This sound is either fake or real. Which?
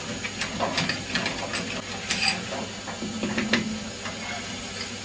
real